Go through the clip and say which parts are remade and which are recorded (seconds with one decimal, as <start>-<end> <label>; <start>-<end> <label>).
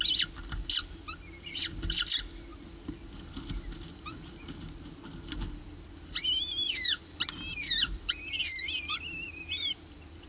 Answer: 0.0-7.6 recorded; 7.6-8.3 remade; 8.3-10.3 recorded